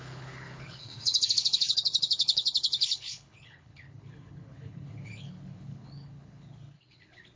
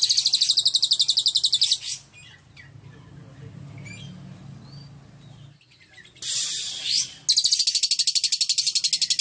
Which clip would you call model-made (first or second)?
first